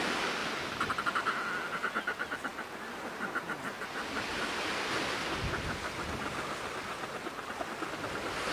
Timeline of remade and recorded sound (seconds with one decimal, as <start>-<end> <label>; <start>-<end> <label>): 0.0-8.5 recorded